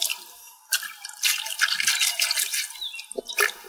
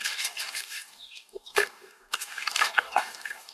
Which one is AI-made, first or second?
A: second